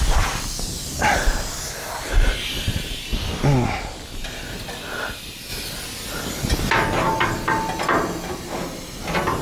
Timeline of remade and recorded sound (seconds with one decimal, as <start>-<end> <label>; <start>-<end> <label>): 0.0-9.4 recorded